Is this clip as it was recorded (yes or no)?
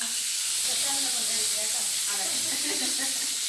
yes